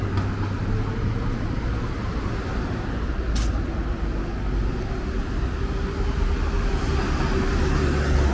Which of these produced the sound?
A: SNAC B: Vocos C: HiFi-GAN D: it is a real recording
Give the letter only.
D